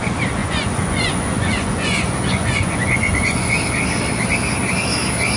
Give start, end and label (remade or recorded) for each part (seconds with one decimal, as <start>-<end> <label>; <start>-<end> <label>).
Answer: 0.0-0.4 recorded; 0.4-3.6 remade; 3.6-5.4 recorded